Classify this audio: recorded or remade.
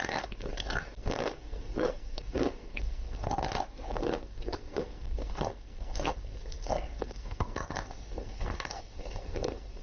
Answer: remade